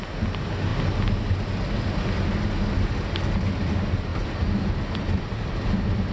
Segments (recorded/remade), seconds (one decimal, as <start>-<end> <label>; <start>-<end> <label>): 0.0-6.1 recorded